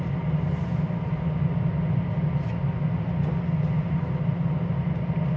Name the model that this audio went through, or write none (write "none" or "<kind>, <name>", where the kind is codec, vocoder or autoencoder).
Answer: none